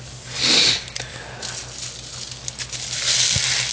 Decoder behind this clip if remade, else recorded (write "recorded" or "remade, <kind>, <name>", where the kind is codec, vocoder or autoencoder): recorded